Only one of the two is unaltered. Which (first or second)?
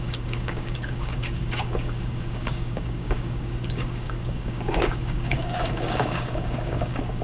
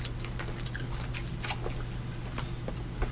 second